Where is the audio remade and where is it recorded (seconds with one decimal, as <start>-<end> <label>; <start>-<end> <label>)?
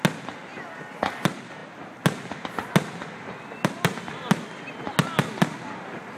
0.0-6.2 recorded